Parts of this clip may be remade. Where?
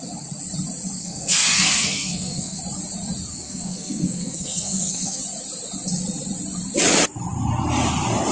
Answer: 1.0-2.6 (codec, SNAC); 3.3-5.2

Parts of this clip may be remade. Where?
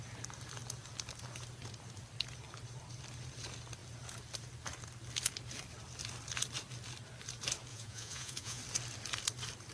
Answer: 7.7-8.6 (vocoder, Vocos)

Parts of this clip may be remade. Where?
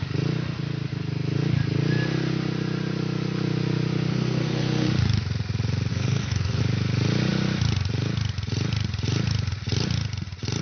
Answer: 4.1-4.9 (codec, SNAC); 5.9-6.6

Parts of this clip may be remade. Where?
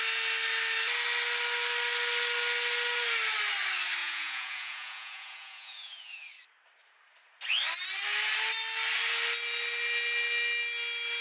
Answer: 4.0-6.3 (vocoder, Vocos)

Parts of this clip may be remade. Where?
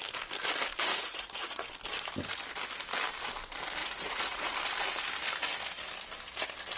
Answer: 0.9-1.7 (vocoder, Vocos); 3.8-4.5